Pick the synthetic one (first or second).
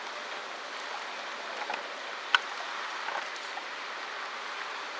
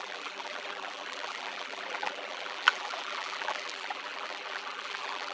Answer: second